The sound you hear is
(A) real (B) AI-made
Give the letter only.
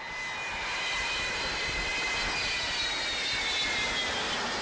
A